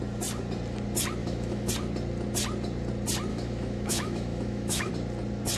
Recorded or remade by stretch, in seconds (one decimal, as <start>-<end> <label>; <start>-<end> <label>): 0.0-1.2 recorded; 1.2-1.7 remade; 1.7-3.3 recorded; 3.3-4.9 remade; 4.9-5.6 recorded

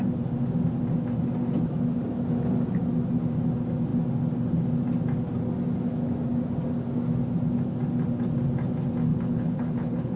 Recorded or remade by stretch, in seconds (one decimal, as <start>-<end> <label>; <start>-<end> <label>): 0.0-9.1 recorded; 9.1-10.2 remade

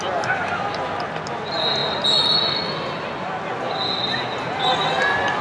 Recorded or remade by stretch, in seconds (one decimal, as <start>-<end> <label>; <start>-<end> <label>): 0.0-5.4 recorded

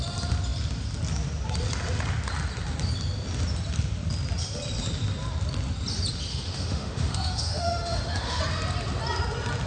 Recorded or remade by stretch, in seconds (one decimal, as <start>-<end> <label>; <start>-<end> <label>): 0.0-6.3 recorded; 6.3-8.4 remade; 8.4-9.7 recorded

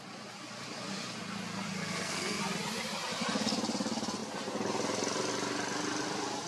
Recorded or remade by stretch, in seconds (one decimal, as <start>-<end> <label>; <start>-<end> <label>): 0.0-1.8 recorded; 1.8-2.4 remade; 2.4-6.5 recorded

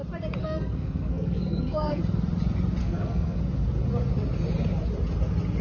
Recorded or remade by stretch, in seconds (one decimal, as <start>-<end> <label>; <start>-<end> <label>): 0.0-0.4 recorded; 0.4-2.0 remade; 2.0-2.8 recorded; 2.8-3.4 remade; 3.4-5.6 recorded